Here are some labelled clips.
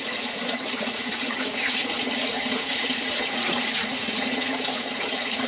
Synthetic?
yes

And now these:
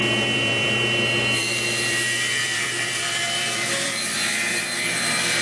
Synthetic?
yes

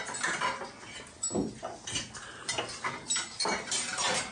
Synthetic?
no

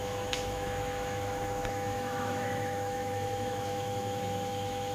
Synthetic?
yes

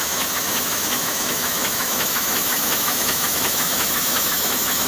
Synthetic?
yes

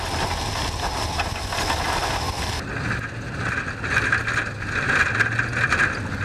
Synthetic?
no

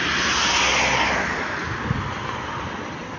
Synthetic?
no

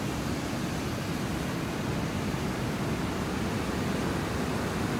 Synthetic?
no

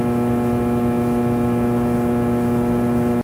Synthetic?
no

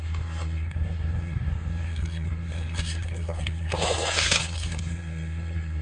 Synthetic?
yes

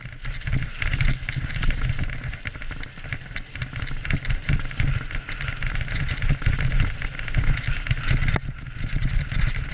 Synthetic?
no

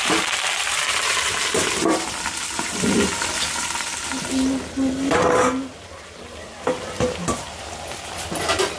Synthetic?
yes